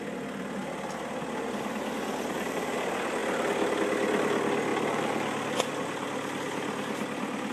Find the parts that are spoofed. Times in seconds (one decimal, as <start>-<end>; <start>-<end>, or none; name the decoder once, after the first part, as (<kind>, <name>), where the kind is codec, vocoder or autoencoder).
none